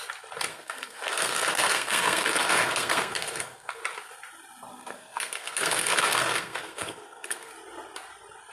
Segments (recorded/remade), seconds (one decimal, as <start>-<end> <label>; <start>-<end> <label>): 0.0-0.5 recorded; 0.5-3.8 remade; 3.8-4.7 recorded; 4.7-7.5 remade; 7.5-8.5 recorded